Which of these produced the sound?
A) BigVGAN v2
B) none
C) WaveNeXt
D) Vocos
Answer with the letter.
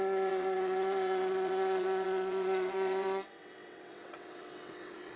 C